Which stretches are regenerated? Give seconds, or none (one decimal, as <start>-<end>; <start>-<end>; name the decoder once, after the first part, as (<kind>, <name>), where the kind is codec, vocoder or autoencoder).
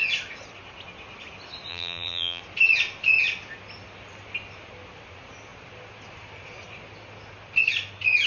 1.7-2.4 (vocoder, BigVGAN v2)